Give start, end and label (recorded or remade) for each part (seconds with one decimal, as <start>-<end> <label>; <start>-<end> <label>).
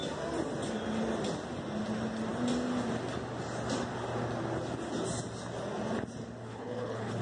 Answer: 0.0-6.5 recorded; 6.5-7.2 remade